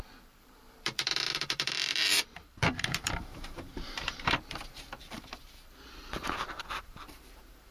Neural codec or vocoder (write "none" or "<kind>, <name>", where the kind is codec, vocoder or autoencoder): vocoder, BigVGAN v2